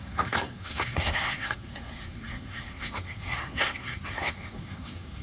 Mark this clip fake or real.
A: fake